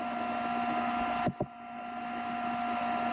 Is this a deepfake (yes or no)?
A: no